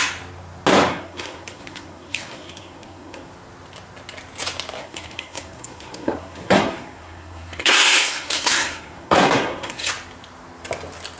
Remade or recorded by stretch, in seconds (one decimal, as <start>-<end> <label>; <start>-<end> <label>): 0.0-0.9 recorded; 0.9-3.3 remade; 3.3-4.8 recorded; 4.8-9.9 remade; 9.9-11.2 recorded